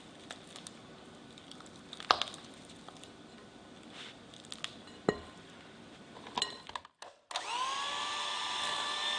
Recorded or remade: recorded